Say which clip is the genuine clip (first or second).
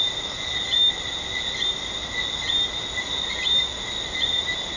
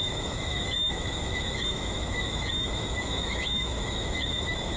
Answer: first